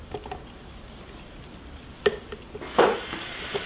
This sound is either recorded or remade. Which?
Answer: recorded